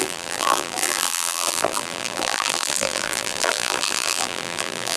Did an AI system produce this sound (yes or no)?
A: yes